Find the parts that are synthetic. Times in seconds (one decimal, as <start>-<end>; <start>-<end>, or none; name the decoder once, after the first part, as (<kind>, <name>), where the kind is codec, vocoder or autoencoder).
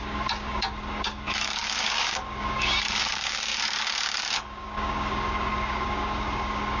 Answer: 0.0-6.8 (codec, DAC)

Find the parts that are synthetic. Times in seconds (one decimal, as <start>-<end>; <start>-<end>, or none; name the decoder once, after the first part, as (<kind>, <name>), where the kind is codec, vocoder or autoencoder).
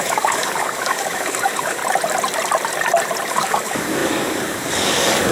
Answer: 0.0-1.8 (codec, DAC); 3.3-5.3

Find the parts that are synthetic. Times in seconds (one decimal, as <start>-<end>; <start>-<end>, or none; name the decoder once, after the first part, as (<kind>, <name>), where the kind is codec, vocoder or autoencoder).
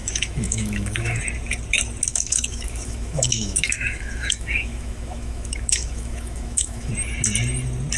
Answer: 0.0-1.2 (autoencoder, DAC-VAE); 2.1-6.9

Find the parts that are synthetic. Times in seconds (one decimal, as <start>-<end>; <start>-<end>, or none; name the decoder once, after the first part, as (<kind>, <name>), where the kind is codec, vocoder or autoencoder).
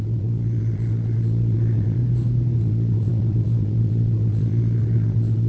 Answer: 0.0-2.0 (vocoder, Vocos); 2.6-5.5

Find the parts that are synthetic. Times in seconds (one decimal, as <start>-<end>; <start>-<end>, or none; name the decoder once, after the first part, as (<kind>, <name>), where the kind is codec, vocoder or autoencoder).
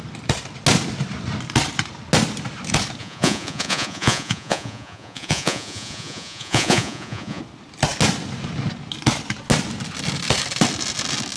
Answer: 3.0-7.4 (vocoder, Vocos)